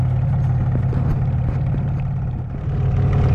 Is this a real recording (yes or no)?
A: yes